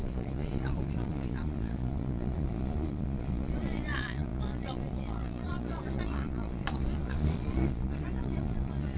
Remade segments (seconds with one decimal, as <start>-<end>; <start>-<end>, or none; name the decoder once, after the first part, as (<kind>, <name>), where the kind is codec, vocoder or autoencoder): 0.0-9.0 (vocoder, Vocos)